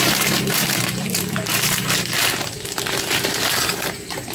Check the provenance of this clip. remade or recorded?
remade